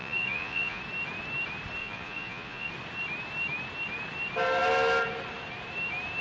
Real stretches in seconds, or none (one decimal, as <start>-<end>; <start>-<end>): 0.8-1.8; 2.7-6.2